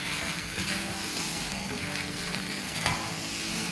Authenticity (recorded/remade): remade